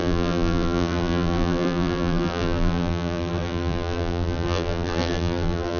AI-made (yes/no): yes